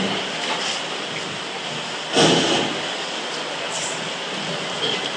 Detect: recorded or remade remade